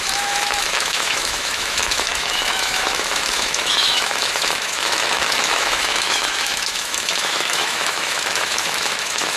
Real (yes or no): no